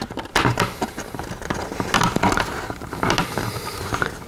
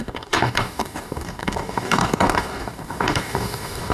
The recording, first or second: first